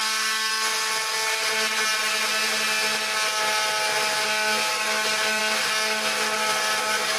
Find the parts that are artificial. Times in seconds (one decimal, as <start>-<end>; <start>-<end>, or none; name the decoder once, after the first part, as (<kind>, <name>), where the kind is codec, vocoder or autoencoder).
0.0-0.5 (codec, DAC); 4.7-5.4; 6.8-7.2

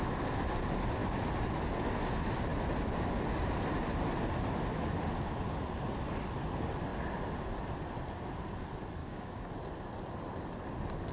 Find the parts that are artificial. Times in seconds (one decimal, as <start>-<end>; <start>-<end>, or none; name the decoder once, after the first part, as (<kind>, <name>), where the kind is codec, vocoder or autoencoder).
9.0-9.5 (codec, DAC)

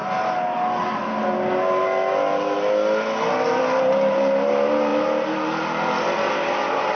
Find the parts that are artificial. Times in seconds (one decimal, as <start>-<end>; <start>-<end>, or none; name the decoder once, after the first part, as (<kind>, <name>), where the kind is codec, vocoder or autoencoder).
none

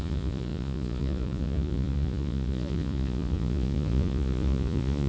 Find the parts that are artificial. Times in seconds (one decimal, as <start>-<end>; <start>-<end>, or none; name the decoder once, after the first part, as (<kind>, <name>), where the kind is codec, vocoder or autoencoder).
0.0-5.1 (vocoder, Vocos)

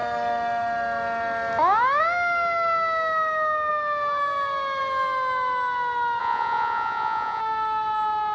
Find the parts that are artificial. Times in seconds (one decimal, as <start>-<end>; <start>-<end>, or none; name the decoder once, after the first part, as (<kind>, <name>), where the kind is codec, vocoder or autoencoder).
6.2-7.4 (vocoder, Vocos)

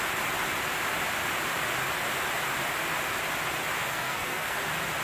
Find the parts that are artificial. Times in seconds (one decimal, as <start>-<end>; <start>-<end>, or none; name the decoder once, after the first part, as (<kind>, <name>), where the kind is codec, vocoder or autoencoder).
3.8-4.6 (codec, SNAC)

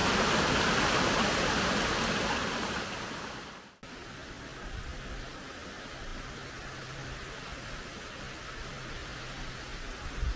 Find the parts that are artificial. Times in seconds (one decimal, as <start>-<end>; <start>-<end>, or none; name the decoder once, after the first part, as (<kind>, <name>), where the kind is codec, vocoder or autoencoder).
9.0-10.0 (vocoder, BigVGAN v2)